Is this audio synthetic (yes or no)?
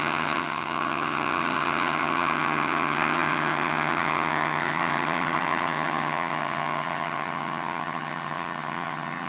yes